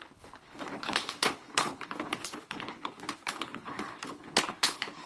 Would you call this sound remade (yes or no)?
yes